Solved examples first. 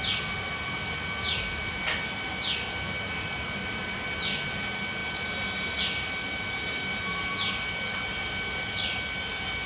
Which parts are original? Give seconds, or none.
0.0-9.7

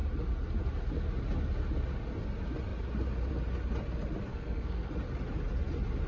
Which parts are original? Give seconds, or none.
0.0-4.3; 4.9-6.1

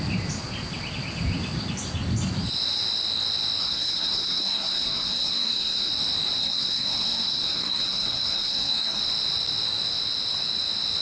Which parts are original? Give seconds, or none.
0.0-3.6; 5.9-6.4; 9.0-11.0